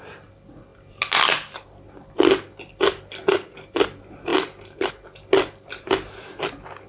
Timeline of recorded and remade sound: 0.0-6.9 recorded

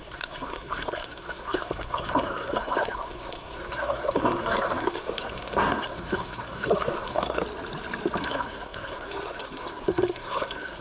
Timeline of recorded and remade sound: 0.0-7.4 remade; 7.4-8.2 recorded; 8.2-10.8 remade

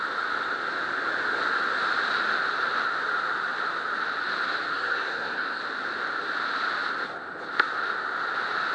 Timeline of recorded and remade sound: 0.0-4.7 recorded; 4.7-5.6 remade; 5.6-8.7 recorded

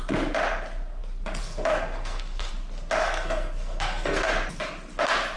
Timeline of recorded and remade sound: 0.0-1.4 recorded; 1.4-2.5 remade; 2.5-3.0 recorded; 3.0-4.3 remade; 4.3-5.4 recorded

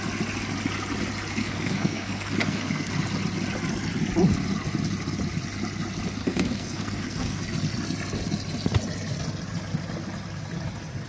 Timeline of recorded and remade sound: 0.0-1.4 recorded; 1.4-2.9 remade; 2.9-6.2 recorded; 6.2-7.4 remade; 7.4-11.1 recorded

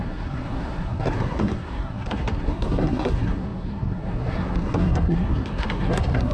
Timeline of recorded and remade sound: 0.0-6.3 remade

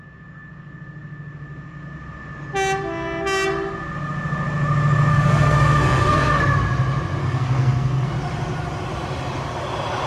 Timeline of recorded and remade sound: 0.0-5.1 recorded; 5.1-6.4 remade; 6.4-7.2 recorded; 7.2-8.1 remade; 8.1-10.1 recorded